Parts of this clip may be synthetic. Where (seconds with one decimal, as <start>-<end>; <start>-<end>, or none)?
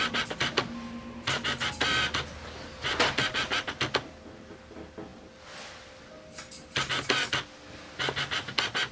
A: none